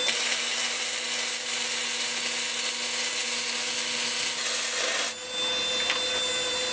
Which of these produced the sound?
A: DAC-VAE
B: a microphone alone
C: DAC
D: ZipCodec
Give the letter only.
B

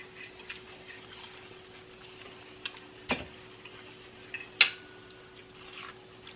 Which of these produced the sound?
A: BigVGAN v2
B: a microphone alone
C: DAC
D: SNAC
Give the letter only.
B